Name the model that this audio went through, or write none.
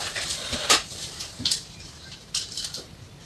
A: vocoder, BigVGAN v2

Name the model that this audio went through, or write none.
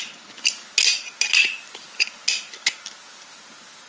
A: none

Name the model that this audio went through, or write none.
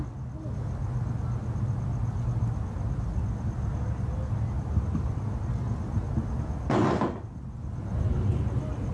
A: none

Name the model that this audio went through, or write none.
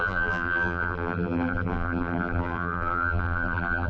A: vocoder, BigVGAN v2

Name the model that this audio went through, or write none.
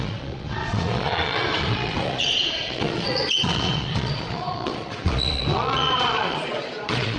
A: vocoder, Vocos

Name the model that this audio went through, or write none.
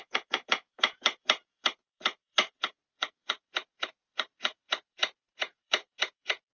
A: vocoder, Vocos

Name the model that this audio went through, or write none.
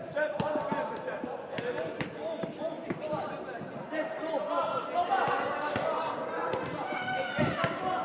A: none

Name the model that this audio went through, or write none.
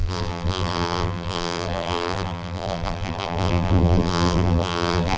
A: vocoder, BigVGAN v2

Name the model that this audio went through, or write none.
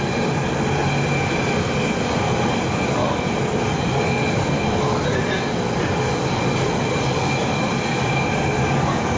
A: none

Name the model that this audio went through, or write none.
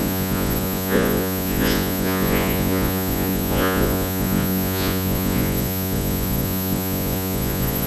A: vocoder, Vocos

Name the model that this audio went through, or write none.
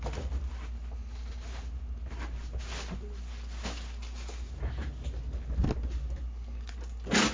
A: none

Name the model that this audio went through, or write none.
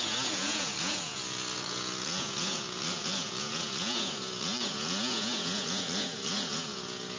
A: vocoder, Vocos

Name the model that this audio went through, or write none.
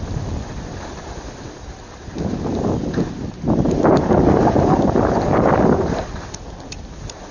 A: none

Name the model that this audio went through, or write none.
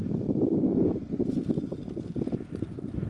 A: none